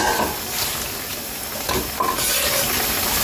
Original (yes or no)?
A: yes